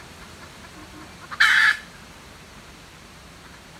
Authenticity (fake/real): fake